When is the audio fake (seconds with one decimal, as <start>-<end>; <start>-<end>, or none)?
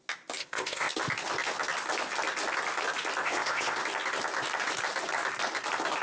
0.4-0.9; 3.2-3.8